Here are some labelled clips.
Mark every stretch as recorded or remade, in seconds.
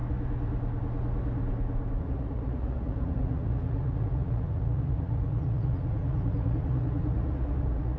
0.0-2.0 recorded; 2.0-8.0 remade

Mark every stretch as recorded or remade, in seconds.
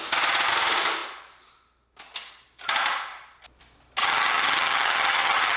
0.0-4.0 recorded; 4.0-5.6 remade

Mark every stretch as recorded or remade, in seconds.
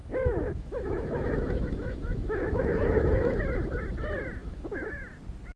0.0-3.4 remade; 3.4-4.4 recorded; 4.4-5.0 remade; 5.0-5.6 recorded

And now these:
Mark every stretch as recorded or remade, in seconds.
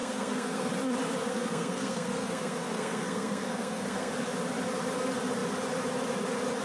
0.0-0.7 remade; 0.7-1.2 recorded; 1.2-4.1 remade; 4.1-6.6 recorded